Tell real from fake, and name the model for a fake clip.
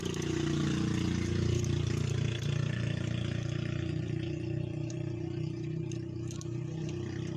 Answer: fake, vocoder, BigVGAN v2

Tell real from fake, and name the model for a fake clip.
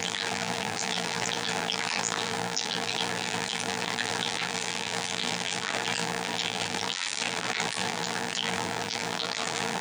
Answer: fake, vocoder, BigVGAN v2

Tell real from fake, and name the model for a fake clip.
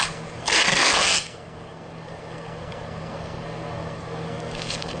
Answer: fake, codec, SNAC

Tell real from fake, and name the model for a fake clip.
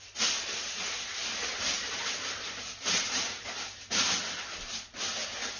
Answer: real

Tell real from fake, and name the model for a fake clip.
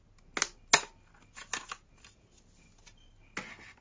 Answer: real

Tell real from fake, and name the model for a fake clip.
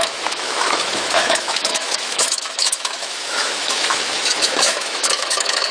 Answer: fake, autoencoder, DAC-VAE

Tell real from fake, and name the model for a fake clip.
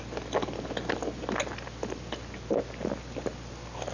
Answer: real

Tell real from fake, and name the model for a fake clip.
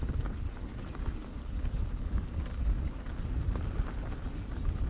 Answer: real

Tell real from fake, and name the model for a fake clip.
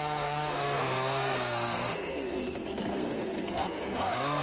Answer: fake, codec, SNAC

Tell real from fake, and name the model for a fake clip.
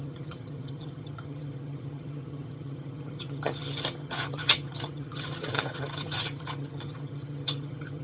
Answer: fake, vocoder, HiFi-GAN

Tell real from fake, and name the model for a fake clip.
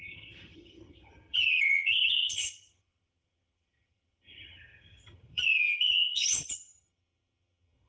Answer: fake, vocoder, HiFi-GAN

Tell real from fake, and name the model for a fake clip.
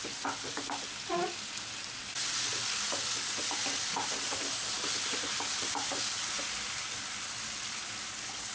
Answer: real